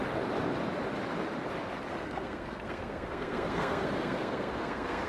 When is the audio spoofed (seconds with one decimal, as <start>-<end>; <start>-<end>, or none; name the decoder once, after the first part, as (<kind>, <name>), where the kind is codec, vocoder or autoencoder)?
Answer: 1.9-5.1 (codec, SNAC)